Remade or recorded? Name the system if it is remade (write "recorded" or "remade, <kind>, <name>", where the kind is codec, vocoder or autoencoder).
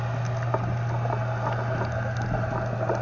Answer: recorded